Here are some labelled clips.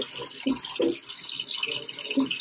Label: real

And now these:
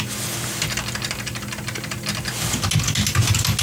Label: real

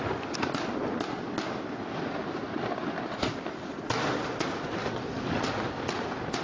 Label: real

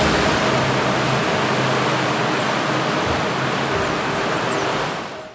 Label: real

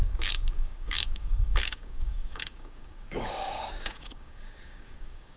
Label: fake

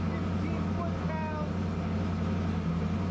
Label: real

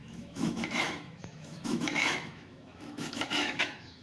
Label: fake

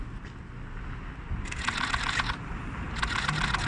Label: real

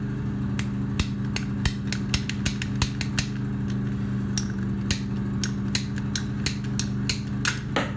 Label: real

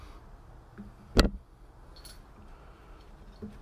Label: real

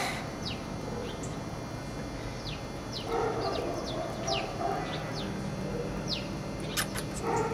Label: real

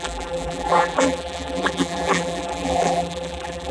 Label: fake